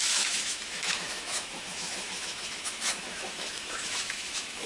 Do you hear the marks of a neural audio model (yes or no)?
yes